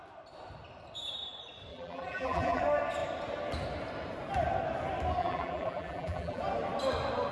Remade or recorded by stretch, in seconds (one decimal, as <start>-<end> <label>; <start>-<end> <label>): 0.0-1.7 recorded; 1.7-2.6 remade; 2.6-5.2 recorded; 5.2-6.4 remade; 6.4-7.3 recorded